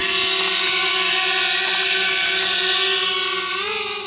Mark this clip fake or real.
real